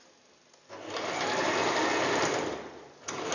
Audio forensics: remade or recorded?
recorded